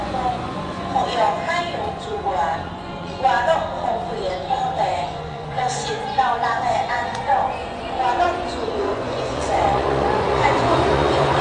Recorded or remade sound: remade